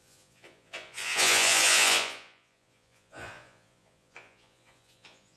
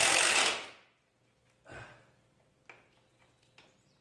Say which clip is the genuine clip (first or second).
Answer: second